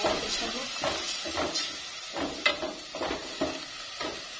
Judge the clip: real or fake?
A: real